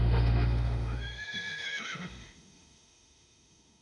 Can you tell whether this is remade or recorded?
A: remade